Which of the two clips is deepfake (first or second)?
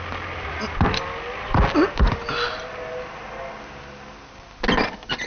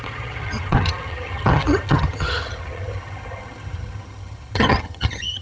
second